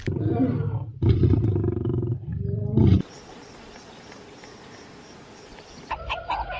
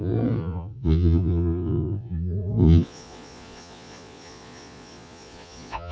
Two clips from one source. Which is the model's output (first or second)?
second